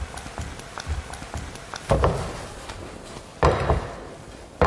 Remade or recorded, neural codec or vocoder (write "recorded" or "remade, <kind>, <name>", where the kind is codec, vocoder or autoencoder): recorded